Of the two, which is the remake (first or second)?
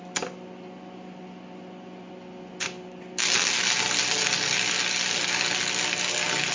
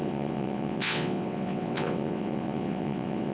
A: second